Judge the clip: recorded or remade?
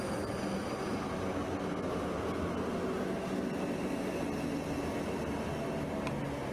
recorded